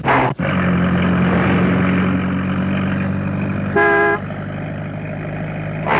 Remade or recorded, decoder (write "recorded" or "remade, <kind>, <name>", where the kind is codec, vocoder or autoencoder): recorded